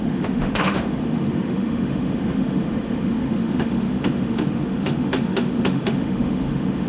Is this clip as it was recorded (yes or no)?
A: no